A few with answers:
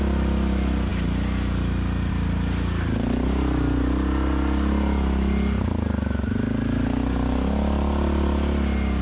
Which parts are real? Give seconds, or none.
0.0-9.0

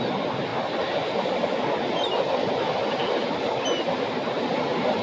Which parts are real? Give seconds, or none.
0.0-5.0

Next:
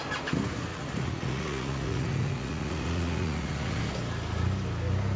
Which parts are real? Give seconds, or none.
0.0-0.7; 3.8-5.2